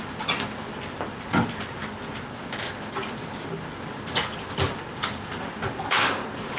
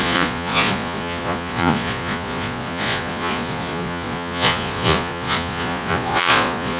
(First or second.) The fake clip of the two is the second